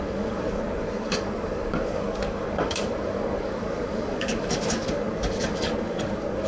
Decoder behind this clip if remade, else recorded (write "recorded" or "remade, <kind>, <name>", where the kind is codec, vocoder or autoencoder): remade, codec, DAC